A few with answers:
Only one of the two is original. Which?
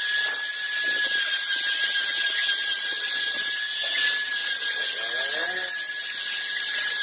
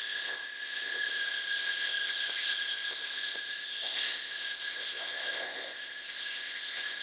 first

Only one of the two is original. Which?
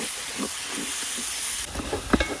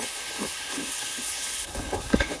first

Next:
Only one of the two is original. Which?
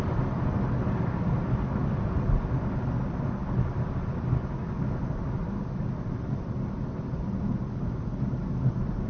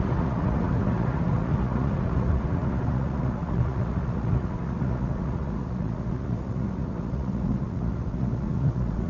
first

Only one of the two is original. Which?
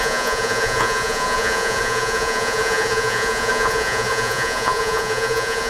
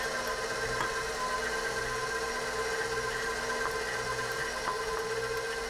second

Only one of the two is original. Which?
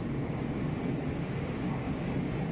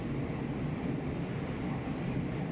second